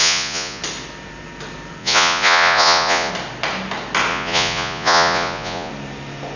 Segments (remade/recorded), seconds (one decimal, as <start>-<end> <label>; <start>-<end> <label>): 0.0-0.6 remade; 0.6-1.8 recorded; 1.8-3.1 remade; 3.1-4.1 recorded; 4.1-5.7 remade; 5.7-6.4 recorded